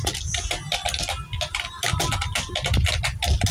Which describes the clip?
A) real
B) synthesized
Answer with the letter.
A